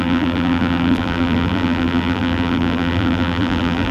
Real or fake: fake